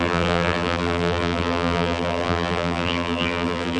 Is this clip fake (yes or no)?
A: yes